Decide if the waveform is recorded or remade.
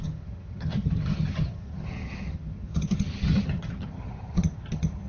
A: remade